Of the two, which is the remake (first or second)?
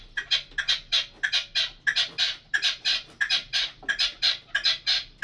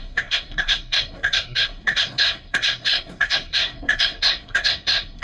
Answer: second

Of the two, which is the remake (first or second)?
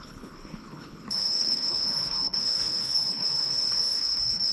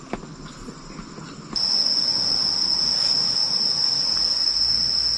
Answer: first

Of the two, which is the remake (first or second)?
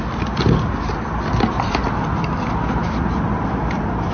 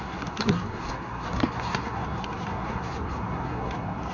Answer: second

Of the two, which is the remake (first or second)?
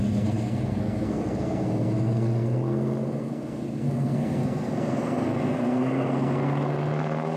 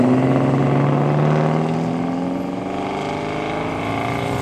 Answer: first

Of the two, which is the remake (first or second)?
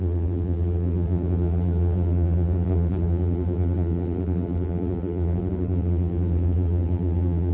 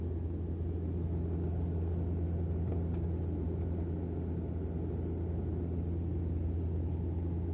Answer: first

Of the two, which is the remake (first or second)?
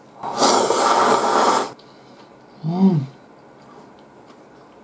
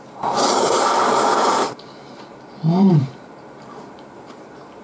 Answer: second